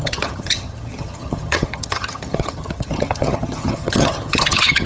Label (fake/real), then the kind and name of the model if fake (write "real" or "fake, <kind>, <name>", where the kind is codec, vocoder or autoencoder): fake, vocoder, HiFi-GAN